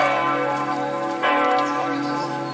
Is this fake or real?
fake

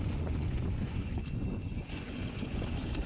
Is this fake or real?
fake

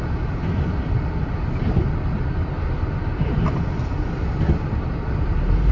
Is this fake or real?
real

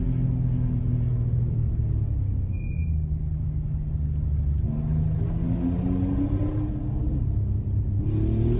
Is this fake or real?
real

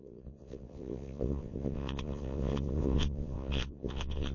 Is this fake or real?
fake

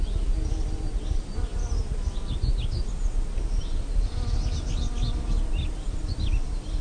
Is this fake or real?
real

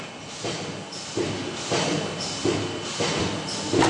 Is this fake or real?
real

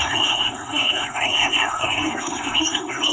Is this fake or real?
fake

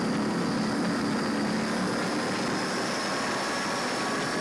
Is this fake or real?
real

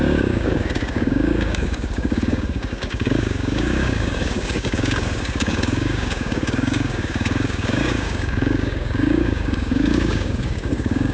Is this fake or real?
fake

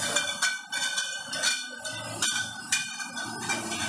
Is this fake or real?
real